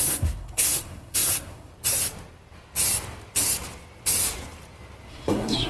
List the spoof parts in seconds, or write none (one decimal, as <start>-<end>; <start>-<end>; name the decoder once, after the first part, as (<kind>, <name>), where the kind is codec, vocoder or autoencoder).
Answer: 0.0-1.7 (codec, SNAC); 5.1-5.7